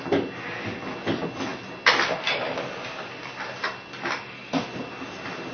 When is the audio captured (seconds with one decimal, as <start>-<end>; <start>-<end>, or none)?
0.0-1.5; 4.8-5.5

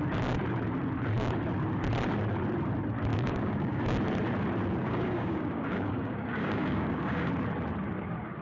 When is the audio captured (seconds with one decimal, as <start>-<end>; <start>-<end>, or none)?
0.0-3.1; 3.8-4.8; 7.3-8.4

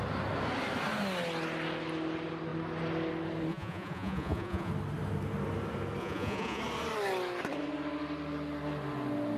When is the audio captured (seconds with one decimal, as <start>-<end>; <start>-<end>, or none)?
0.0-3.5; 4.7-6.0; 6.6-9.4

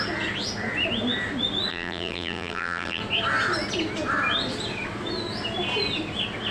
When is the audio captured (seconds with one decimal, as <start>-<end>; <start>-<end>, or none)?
0.0-1.7; 3.0-6.5